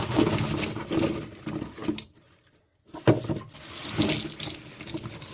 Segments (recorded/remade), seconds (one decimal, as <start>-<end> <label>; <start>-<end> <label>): 0.0-5.3 recorded